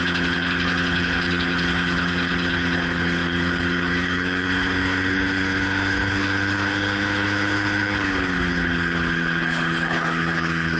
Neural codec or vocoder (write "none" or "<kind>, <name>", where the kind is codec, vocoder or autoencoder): codec, HILCodec